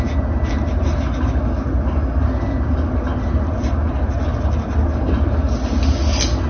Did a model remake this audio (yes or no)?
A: no